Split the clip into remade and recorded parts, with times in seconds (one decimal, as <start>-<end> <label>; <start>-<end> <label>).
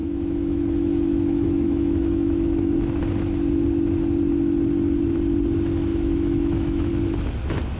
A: 0.0-3.0 remade; 3.0-5.9 recorded; 5.9-6.9 remade; 6.9-7.8 recorded